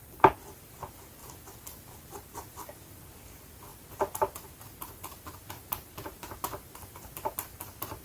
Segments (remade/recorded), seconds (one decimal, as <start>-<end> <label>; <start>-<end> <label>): 0.0-8.0 recorded